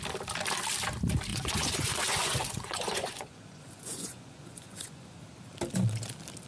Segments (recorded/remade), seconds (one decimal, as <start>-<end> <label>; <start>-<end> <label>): 0.0-1.3 recorded; 1.3-5.2 remade; 5.2-6.5 recorded